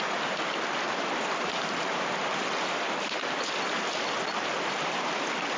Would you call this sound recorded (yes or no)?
yes